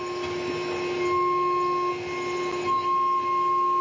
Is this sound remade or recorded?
recorded